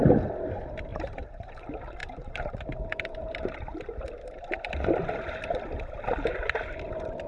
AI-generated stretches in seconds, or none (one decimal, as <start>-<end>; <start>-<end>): 0.9-1.6; 2.0-4.0